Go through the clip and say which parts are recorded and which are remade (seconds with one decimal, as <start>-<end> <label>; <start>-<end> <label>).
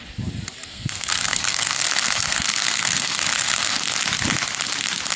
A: 0.0-0.7 recorded; 0.7-3.8 remade; 3.8-5.2 recorded